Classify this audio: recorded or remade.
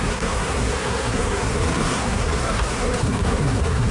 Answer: remade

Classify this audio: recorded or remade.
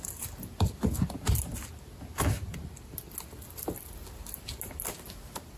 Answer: recorded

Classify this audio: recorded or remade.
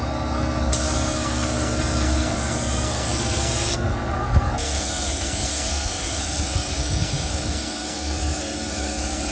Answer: remade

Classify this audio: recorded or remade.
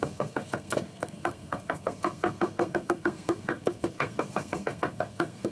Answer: remade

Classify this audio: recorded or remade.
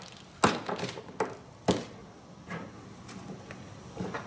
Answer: recorded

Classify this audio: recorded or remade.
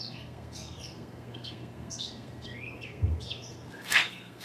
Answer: remade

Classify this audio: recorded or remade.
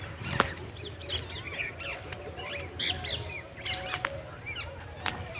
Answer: recorded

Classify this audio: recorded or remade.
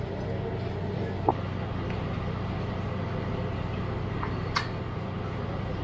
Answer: recorded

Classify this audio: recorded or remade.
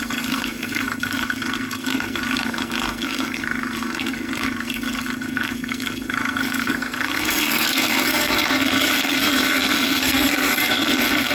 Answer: remade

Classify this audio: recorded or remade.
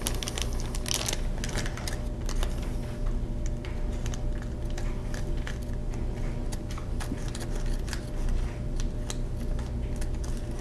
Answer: recorded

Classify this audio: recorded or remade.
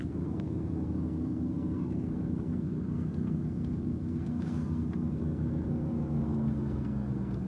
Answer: remade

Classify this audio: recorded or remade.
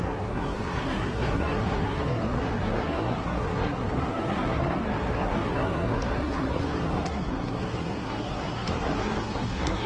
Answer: remade